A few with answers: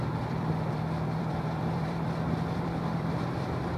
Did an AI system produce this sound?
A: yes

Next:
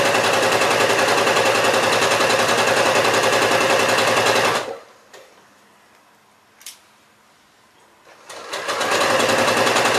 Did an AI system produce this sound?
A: no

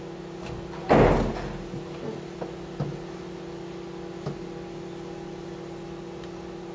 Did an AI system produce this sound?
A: no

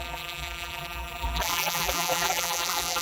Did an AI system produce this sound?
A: yes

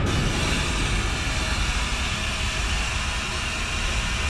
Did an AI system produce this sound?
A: no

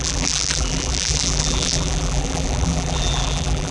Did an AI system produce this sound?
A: yes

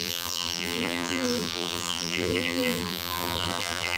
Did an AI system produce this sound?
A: yes